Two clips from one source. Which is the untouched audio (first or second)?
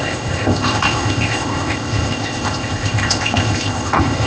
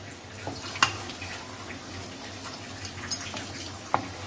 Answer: second